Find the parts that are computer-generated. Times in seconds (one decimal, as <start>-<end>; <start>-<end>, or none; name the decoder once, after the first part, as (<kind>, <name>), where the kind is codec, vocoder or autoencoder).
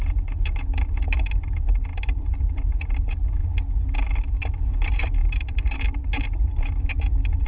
0.0-3.4 (vocoder, BigVGAN v2); 4.7-7.5